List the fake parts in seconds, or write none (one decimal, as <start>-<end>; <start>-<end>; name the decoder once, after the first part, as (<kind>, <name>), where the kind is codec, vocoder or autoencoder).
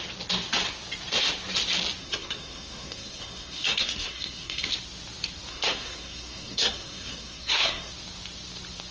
2.0-4.7 (codec, SNAC); 5.5-7.9